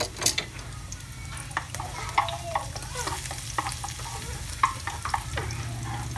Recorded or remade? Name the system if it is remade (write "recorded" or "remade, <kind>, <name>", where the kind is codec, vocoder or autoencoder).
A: recorded